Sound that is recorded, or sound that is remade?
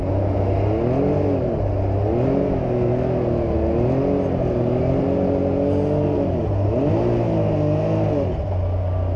recorded